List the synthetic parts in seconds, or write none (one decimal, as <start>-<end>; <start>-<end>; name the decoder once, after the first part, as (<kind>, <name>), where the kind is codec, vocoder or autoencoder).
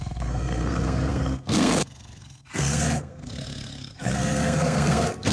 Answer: 0.0-5.3 (codec, SNAC)